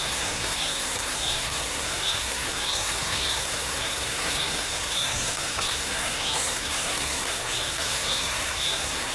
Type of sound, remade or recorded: remade